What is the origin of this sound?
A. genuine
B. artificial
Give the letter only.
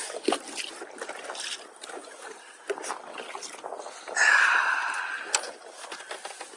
A